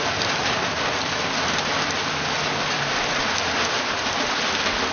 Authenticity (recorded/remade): recorded